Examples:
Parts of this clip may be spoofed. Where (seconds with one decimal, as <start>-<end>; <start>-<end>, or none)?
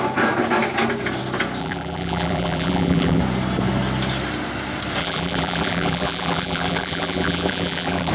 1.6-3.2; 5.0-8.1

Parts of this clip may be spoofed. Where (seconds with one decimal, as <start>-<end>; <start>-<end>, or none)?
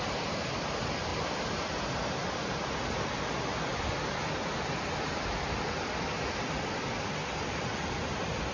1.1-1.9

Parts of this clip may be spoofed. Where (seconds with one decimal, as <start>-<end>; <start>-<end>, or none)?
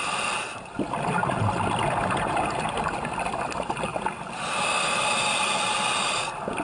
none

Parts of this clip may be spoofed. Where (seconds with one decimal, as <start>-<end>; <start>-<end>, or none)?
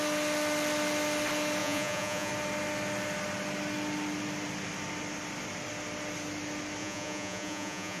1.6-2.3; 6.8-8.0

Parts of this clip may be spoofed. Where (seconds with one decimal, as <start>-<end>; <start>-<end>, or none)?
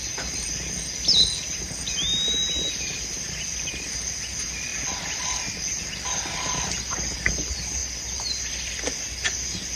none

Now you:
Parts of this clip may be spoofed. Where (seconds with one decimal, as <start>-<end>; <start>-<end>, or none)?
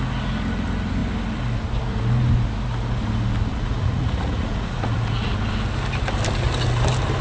3.5-5.3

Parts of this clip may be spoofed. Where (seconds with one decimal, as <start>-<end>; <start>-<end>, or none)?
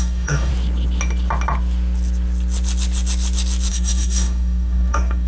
0.0-0.5; 3.7-5.3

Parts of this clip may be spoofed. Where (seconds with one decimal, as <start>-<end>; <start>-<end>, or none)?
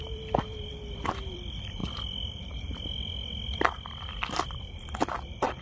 0.0-5.6